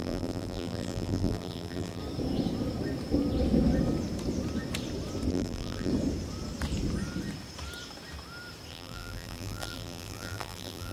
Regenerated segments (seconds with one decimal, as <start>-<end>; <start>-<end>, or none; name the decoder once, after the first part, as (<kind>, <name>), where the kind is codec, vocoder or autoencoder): 0.0-2.0 (vocoder, BigVGAN v2); 5.3-5.9; 8.7-10.9